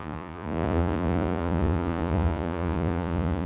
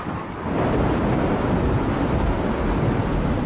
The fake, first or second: first